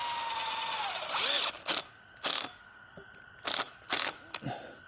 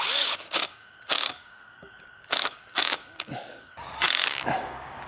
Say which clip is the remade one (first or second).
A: second